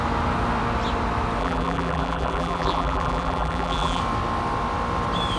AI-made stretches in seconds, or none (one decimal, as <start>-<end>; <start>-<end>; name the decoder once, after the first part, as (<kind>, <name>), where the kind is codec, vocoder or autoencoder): 1.4-4.0 (vocoder, BigVGAN v2)